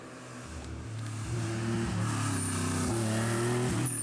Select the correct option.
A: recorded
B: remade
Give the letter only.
A